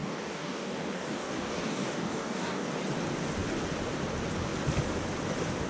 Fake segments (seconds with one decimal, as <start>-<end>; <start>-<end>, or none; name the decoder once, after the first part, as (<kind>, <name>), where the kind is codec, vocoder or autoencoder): 0.0-2.7 (codec, DAC)